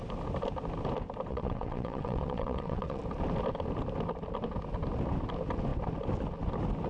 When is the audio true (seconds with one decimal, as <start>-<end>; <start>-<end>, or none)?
0.0-1.3; 3.0-6.9